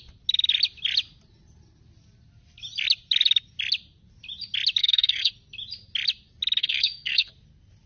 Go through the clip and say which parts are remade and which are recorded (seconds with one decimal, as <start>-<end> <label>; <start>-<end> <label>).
0.0-4.8 recorded; 4.8-5.3 remade; 5.3-6.6 recorded; 6.6-7.3 remade; 7.3-7.9 recorded